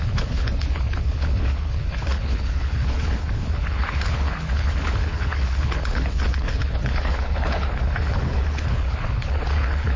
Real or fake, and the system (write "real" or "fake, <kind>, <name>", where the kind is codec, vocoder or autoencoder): fake, codec, HILCodec